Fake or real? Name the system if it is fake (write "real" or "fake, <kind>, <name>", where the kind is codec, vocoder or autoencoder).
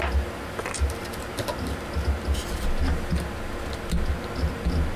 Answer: real